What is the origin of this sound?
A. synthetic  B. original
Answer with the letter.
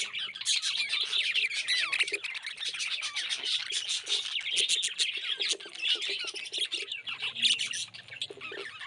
B